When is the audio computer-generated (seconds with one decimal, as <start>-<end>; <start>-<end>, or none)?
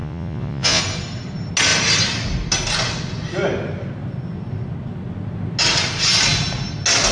0.0-0.8